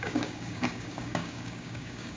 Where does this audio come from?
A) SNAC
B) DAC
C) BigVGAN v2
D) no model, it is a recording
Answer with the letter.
B